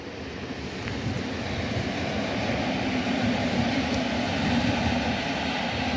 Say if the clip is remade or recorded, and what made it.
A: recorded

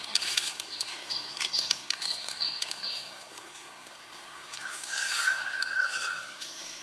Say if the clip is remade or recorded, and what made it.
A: remade, codec, SNAC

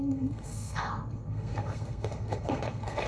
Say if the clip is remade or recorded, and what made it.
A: remade, codec, SNAC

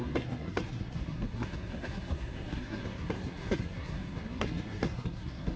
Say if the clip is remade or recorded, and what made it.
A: remade, codec, SNAC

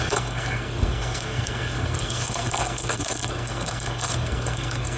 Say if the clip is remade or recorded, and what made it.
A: remade, codec, SNAC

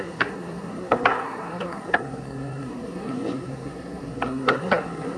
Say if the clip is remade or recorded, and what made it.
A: remade, codec, SNAC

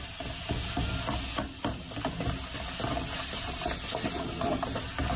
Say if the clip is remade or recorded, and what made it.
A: recorded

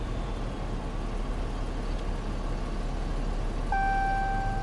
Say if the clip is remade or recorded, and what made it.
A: recorded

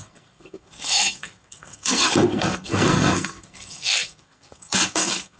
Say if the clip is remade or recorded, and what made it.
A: remade, codec, SNAC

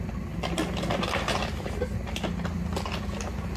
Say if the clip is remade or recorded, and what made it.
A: recorded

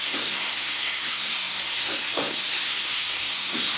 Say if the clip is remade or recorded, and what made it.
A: remade, codec, SNAC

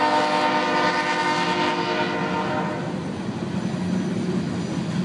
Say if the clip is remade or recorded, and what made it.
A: recorded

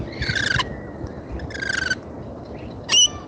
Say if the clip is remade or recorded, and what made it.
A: recorded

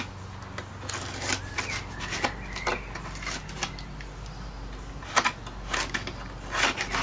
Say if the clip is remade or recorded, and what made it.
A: recorded